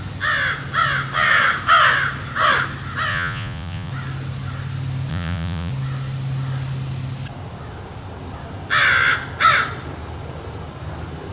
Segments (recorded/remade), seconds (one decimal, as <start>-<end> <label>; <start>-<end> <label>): 0.0-3.1 recorded; 3.1-3.9 remade; 3.9-5.1 recorded; 5.1-5.7 remade; 5.7-11.3 recorded